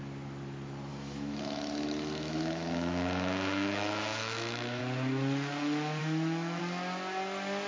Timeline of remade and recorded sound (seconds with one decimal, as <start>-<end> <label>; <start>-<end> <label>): 0.0-0.9 recorded; 0.9-4.8 remade; 4.8-6.0 recorded; 6.0-6.6 remade; 6.6-7.7 recorded